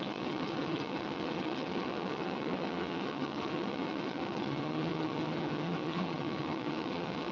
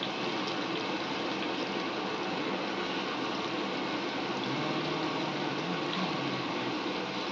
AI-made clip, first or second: first